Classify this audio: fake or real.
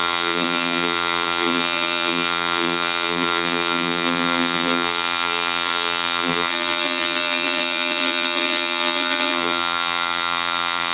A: fake